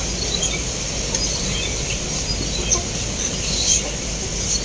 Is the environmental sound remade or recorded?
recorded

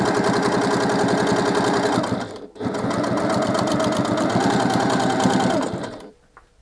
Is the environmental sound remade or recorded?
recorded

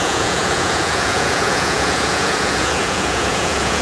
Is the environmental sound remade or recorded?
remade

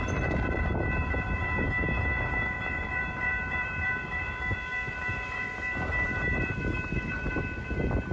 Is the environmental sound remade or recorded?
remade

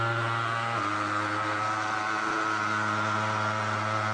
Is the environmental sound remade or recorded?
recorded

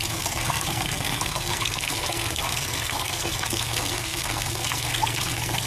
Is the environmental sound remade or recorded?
remade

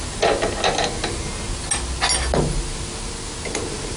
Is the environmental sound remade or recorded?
recorded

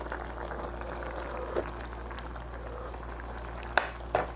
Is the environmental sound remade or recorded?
recorded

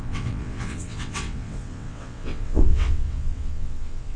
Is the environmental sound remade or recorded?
remade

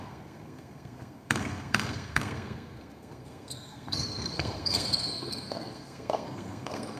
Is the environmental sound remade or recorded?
remade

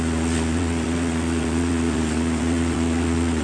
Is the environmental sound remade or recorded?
remade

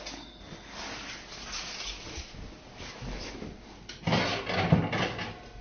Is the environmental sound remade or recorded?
recorded